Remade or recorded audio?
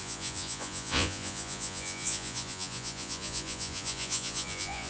remade